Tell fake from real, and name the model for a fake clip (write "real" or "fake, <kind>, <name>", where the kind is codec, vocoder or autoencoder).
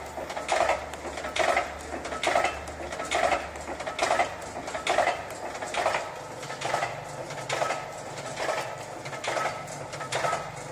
real